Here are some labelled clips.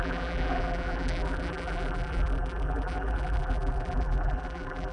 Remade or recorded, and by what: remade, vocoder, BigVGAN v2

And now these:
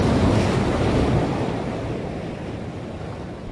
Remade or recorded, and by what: recorded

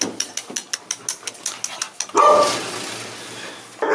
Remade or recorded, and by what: recorded